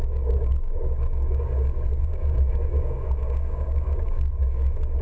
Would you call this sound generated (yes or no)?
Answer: yes